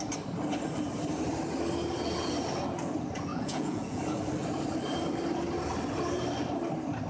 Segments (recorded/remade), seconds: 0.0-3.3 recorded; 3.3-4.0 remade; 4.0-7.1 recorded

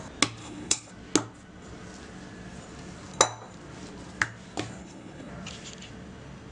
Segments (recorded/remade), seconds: 0.0-0.4 recorded; 0.4-0.9 remade; 0.9-4.8 recorded; 4.8-5.3 remade; 5.3-6.5 recorded